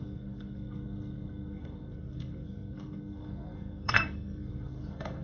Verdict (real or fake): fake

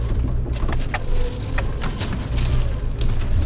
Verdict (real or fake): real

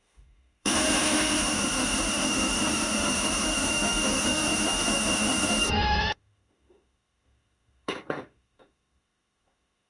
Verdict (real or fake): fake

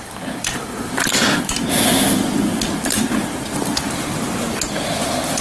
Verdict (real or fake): real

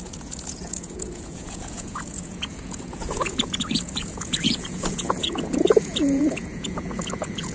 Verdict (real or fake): fake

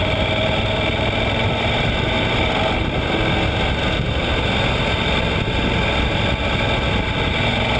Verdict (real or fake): real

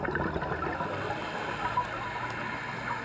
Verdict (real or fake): real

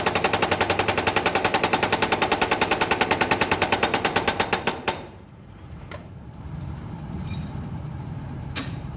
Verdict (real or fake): fake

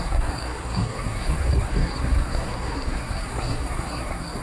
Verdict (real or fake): fake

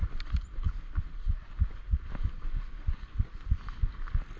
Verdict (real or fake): real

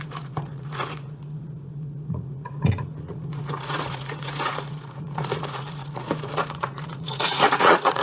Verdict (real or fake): fake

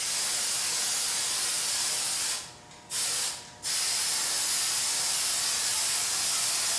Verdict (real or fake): real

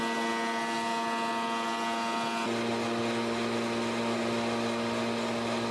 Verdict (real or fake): real